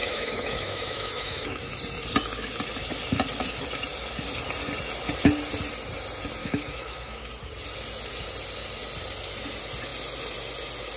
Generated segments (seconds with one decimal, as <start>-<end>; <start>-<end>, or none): 0.0-1.7; 6.4-7.3